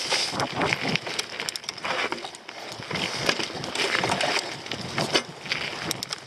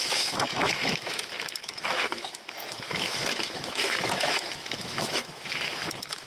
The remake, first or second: second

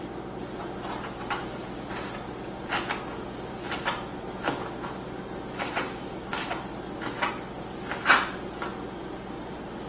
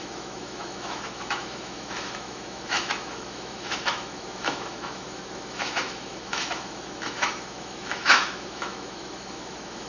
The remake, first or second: second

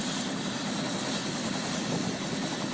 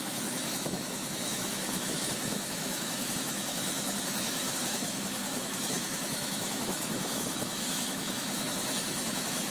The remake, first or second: second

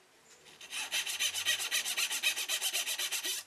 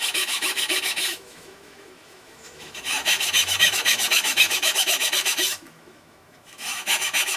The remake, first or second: second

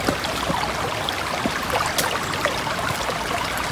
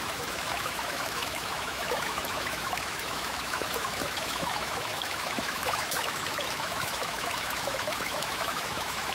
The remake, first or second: second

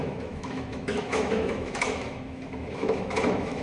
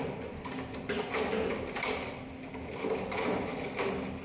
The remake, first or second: first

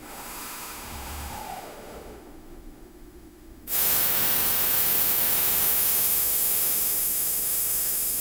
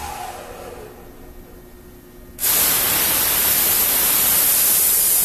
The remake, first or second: first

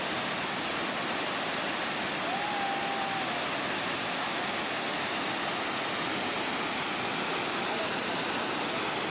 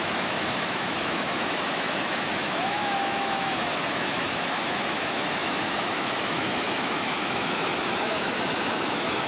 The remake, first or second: second